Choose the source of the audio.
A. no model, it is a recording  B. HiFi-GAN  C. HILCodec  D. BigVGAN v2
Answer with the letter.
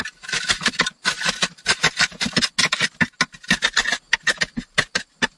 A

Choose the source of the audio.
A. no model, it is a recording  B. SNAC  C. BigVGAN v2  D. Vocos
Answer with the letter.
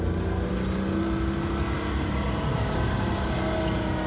A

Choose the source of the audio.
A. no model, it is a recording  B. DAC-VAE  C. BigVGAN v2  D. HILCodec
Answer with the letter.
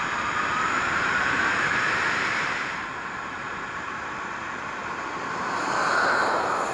C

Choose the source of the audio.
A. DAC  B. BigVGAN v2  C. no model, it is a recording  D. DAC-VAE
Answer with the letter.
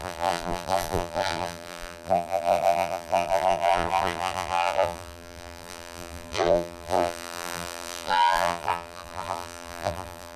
B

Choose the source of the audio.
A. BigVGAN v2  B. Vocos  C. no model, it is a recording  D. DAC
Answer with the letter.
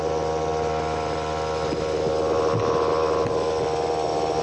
C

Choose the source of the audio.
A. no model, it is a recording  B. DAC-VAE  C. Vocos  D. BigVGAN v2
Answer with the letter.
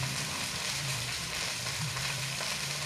D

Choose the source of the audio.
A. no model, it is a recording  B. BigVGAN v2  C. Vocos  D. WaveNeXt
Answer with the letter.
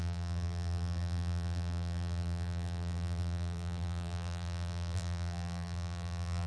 B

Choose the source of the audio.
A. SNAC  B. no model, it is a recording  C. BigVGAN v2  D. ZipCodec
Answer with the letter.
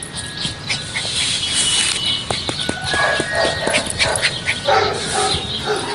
B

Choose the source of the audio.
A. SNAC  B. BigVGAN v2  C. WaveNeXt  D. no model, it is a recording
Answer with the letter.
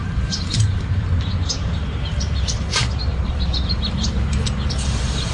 B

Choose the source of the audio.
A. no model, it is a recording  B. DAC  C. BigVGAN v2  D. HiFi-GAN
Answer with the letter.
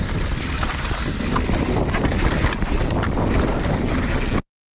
A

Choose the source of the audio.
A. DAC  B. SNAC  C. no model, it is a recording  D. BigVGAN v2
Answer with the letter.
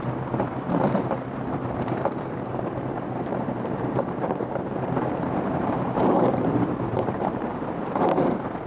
D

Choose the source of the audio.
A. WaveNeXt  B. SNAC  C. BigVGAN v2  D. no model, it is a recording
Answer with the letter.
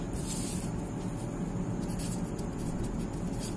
D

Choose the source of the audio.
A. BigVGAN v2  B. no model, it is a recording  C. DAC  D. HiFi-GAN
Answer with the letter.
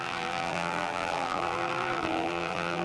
A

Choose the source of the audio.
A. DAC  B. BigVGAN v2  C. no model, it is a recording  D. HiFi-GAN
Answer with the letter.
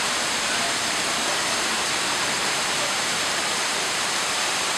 B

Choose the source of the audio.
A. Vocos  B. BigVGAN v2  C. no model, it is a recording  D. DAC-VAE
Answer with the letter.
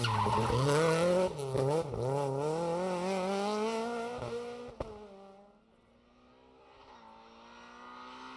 C